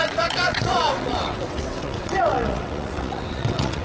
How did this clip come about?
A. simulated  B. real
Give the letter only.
A